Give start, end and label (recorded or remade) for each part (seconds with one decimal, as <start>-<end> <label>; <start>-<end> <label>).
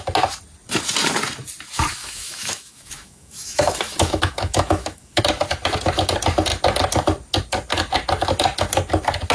0.0-2.0 recorded; 2.0-5.2 remade; 5.2-9.3 recorded